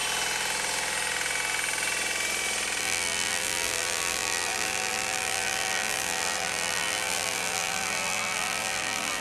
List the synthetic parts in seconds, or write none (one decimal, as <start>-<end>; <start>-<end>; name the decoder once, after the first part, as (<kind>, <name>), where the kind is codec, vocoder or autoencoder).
2.8-9.2 (vocoder, BigVGAN v2)